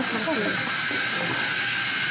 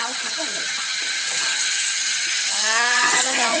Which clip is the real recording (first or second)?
first